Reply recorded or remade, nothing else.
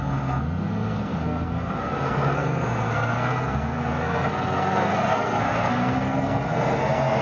remade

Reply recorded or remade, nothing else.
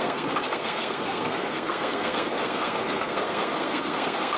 remade